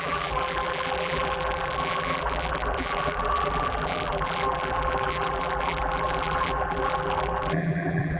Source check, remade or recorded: remade